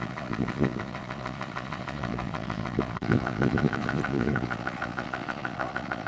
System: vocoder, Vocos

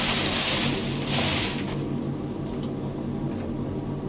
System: none